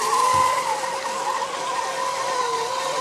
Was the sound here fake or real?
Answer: real